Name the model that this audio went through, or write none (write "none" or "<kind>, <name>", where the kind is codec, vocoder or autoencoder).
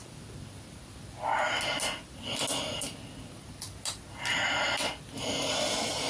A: none